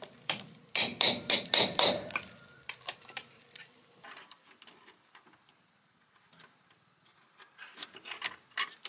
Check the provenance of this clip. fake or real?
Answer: fake